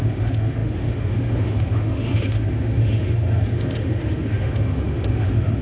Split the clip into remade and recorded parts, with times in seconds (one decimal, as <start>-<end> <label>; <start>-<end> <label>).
0.0-5.6 remade